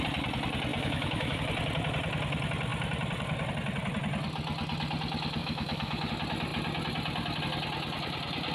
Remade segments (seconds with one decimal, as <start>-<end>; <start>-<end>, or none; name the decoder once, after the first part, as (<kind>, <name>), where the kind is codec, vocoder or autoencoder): 0.7-1.4 (autoencoder, DAC-VAE); 5.4-6.1